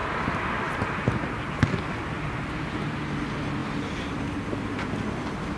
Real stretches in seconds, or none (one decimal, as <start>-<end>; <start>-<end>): 0.0-5.6